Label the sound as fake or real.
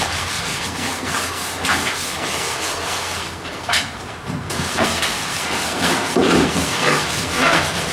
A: fake